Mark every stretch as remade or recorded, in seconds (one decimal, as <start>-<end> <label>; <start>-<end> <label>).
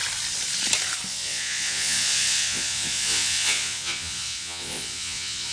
0.0-1.1 recorded; 1.1-5.5 remade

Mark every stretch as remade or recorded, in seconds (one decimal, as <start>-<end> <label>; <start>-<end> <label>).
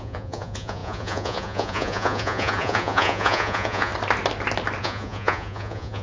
0.0-3.9 remade; 3.9-4.8 recorded; 4.8-6.0 remade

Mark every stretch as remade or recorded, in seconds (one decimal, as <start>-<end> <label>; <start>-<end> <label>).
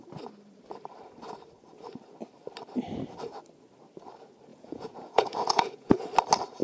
0.0-4.5 recorded; 4.5-6.0 remade; 6.0-6.6 recorded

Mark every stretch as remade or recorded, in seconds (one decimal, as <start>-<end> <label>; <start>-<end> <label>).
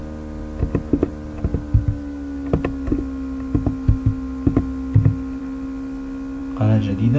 0.0-7.2 recorded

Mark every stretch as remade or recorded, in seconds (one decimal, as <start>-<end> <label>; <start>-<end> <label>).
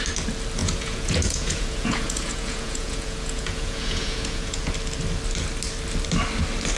0.0-0.6 recorded; 0.6-4.7 remade; 4.7-6.8 recorded